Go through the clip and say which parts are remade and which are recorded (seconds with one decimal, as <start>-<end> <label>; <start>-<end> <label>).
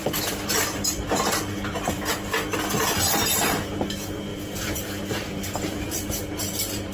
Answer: 0.0-2.9 remade; 2.9-4.3 recorded; 4.3-6.1 remade; 6.1-6.9 recorded